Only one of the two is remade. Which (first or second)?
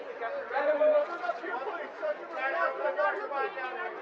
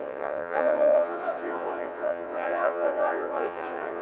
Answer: second